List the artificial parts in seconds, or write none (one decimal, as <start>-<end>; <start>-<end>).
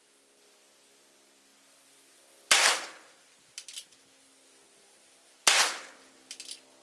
none